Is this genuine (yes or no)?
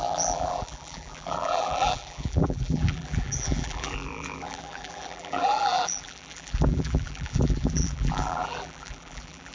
no